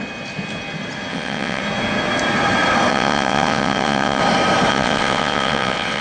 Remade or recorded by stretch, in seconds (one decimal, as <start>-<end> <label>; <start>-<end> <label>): 0.0-1.1 recorded; 1.1-1.6 remade; 1.6-2.9 recorded; 2.9-4.2 remade; 4.2-4.7 recorded; 4.7-6.0 remade